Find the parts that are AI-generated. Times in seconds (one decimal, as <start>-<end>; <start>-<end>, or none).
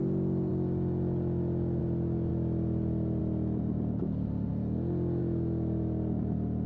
none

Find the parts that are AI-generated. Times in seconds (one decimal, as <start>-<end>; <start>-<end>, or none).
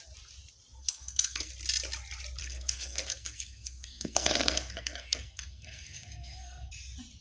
0.8-1.5; 2.4-6.7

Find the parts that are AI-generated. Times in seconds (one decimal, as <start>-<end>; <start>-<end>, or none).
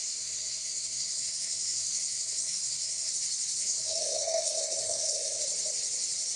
0.0-3.1; 3.6-5.4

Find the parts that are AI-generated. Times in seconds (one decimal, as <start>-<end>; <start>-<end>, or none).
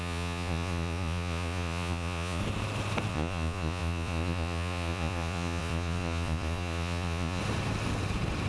0.0-2.4; 3.1-7.4